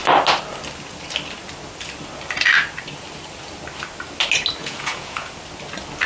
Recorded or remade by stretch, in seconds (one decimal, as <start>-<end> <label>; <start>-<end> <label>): 0.0-4.6 recorded; 4.6-5.3 remade; 5.3-6.1 recorded